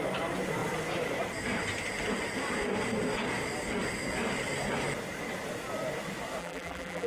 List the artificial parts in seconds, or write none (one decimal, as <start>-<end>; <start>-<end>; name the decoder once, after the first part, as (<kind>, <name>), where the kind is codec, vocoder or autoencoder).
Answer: 6.4-7.1 (vocoder, BigVGAN v2)